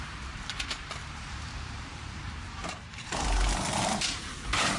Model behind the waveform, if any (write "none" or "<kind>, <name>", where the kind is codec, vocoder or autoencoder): vocoder, BigVGAN v2